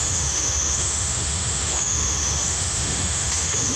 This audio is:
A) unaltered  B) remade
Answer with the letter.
B